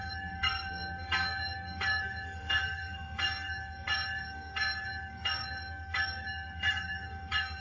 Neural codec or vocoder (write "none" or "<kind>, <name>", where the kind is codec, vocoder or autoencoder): codec, SNAC